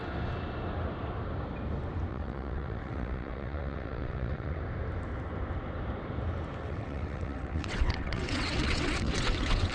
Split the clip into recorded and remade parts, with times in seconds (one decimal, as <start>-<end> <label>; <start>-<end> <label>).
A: 0.0-2.1 recorded; 2.1-4.6 remade; 4.6-6.6 recorded; 6.6-9.7 remade